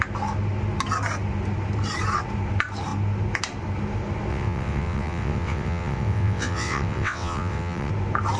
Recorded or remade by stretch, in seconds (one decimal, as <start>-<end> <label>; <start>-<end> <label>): 0.0-4.3 recorded; 4.3-7.9 remade; 7.9-8.4 recorded